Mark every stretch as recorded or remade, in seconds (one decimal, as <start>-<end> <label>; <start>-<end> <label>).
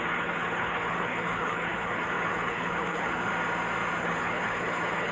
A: 0.0-3.3 remade; 3.3-4.0 recorded; 4.0-5.1 remade